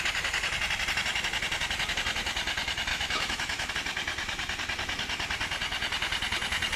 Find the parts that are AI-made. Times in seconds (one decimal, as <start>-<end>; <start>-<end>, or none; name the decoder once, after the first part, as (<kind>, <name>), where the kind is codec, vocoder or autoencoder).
2.9-3.7 (autoencoder, DAC-VAE)